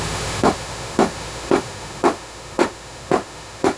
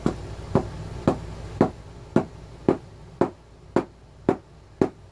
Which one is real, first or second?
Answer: second